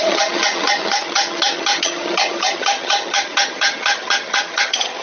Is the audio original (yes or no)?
no